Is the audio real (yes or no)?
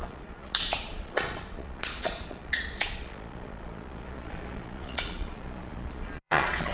no